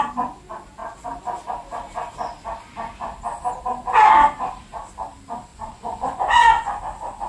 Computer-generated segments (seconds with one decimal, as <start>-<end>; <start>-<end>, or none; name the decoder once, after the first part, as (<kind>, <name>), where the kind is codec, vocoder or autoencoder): 5.5-6.8 (vocoder, Vocos)